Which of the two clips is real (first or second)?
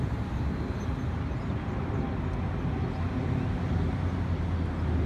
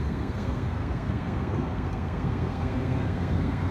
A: first